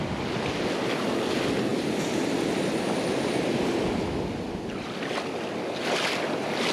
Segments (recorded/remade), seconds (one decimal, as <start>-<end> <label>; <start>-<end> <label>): 0.0-6.7 recorded

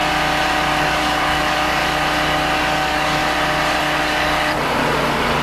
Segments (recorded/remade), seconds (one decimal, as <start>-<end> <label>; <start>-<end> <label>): 0.0-0.8 recorded; 0.8-1.8 remade; 1.8-2.6 recorded; 2.6-3.2 remade; 3.2-3.8 recorded; 3.8-5.4 remade

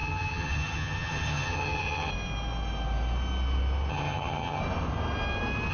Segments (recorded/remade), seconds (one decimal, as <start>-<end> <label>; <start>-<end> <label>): 0.0-2.1 remade; 2.1-3.9 recorded; 3.9-4.6 remade; 4.6-5.7 recorded